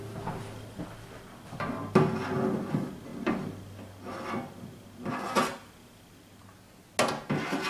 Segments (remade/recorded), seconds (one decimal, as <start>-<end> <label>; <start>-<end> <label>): 0.0-7.7 recorded